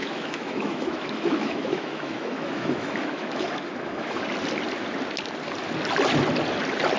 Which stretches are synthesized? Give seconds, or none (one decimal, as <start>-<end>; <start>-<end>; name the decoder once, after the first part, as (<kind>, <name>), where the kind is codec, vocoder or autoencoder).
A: 0.0-4.2 (autoencoder, DAC-VAE)